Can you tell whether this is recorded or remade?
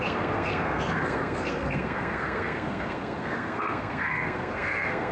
remade